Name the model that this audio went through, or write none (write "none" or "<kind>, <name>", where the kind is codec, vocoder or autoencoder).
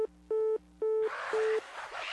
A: none